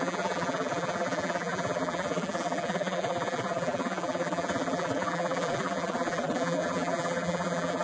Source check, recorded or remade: remade